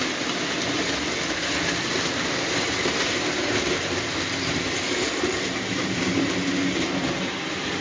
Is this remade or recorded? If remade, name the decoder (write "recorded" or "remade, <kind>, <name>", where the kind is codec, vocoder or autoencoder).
recorded